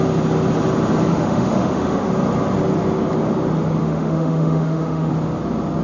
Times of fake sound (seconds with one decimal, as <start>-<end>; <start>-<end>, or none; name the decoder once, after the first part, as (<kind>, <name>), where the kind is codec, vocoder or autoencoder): 1.1-2.1 (autoencoder, DAC-VAE); 3.8-5.1